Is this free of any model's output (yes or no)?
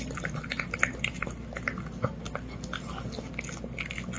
yes